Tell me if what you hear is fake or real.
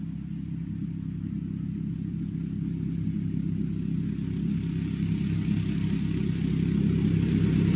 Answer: real